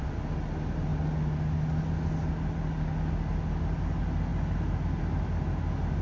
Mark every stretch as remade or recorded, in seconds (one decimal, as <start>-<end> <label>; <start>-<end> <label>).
0.0-6.0 recorded